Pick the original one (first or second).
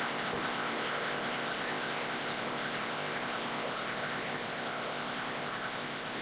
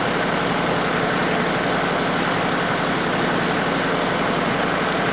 second